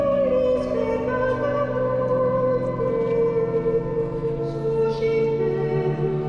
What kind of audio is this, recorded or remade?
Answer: recorded